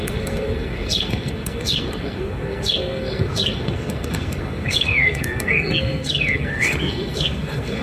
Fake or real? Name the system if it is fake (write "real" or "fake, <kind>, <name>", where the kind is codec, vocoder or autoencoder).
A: fake, codec, SNAC